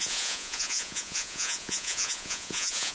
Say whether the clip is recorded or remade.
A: remade